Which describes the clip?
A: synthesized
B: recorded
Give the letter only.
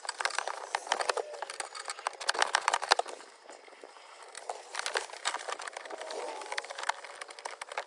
B